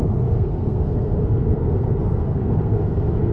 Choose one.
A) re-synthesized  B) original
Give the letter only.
A